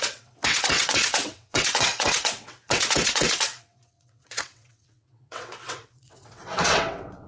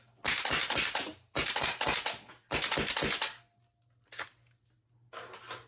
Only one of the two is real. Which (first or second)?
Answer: second